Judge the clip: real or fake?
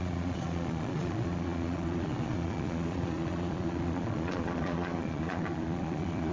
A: fake